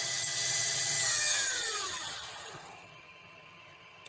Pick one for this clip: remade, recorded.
remade